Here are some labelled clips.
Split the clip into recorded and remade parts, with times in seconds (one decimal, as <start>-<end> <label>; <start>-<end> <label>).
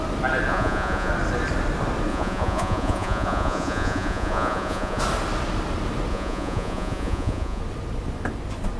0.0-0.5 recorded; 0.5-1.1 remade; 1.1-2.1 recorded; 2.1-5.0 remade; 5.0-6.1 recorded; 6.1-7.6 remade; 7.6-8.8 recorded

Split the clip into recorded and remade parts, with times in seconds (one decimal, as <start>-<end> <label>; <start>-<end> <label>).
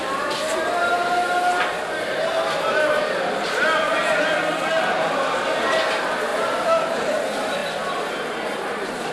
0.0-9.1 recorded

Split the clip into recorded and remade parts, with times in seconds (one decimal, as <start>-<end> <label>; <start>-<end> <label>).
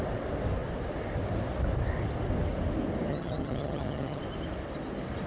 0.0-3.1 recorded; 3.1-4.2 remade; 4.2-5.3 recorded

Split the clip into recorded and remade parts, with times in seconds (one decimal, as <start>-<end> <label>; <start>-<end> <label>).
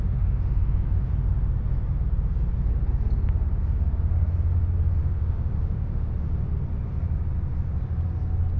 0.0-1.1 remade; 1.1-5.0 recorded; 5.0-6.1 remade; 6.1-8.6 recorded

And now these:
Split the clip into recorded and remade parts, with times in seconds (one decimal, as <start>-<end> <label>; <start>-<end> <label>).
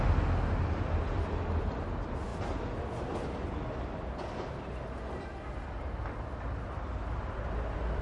0.0-8.0 recorded